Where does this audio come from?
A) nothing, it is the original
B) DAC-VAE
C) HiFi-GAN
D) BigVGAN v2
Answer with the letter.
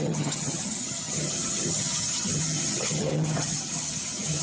C